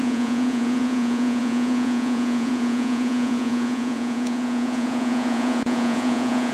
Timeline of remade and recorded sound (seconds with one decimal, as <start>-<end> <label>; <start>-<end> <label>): 0.0-6.5 remade